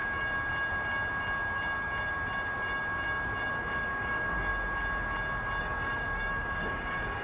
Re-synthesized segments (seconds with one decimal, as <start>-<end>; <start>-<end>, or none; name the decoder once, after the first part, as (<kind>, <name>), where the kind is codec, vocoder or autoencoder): 3.6-4.5 (codec, DAC); 5.6-7.2